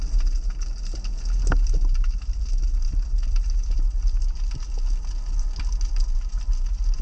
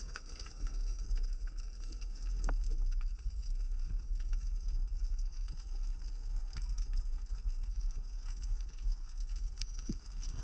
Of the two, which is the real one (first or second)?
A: first